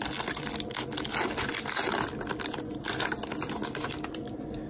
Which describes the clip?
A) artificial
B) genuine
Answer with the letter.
B